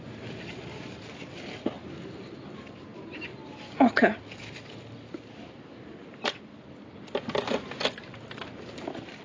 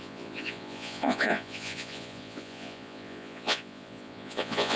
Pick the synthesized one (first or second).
second